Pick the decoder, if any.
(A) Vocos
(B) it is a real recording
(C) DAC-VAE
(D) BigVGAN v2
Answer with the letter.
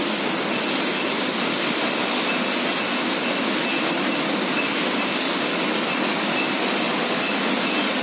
B